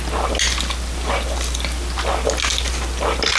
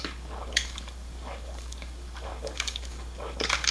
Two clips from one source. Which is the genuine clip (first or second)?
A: first